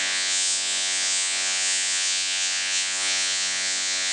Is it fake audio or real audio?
fake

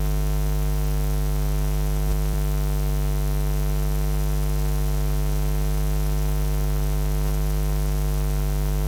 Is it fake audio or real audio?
real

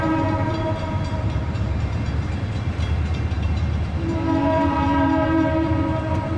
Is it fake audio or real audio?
fake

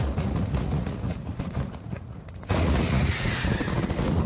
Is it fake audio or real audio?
fake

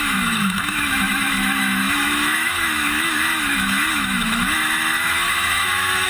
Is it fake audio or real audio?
fake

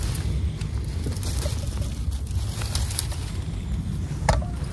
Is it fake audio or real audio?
real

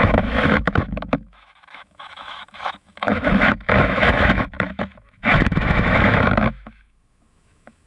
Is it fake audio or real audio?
fake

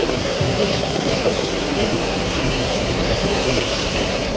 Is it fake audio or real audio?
fake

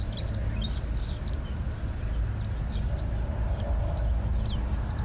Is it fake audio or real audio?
real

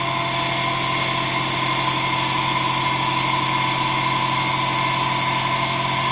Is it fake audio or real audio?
real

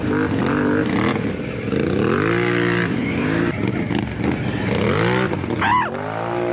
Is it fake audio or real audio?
real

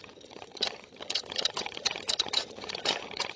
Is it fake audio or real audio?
fake